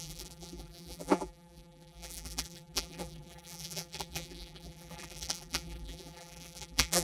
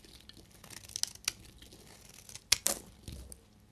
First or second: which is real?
second